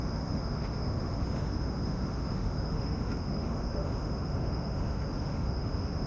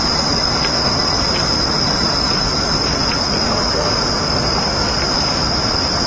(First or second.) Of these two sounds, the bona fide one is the second